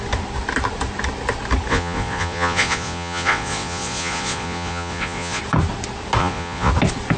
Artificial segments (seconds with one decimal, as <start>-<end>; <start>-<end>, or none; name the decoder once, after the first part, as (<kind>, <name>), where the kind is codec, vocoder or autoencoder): 1.7-5.4 (vocoder, Vocos); 6.2-6.7